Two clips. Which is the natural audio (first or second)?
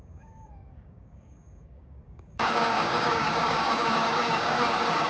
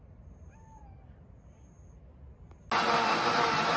second